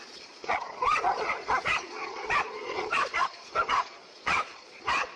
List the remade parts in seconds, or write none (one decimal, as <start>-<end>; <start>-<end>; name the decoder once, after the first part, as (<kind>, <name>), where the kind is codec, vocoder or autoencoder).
0.0-5.2 (vocoder, Vocos)